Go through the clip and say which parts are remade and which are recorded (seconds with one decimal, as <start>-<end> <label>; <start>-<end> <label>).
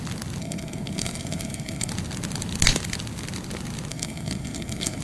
0.0-0.4 recorded; 0.4-1.9 remade; 1.9-3.9 recorded; 3.9-5.0 remade